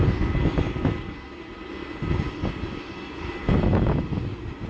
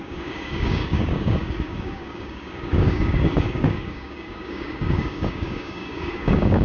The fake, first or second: second